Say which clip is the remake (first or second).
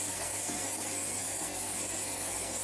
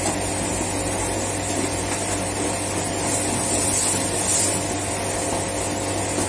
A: first